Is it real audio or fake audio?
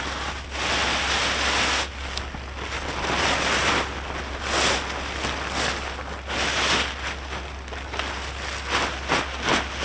real